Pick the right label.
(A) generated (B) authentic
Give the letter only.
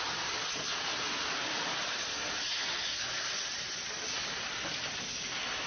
B